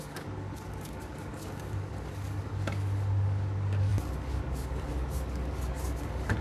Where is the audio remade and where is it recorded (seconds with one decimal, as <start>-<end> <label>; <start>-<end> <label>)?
0.0-6.4 remade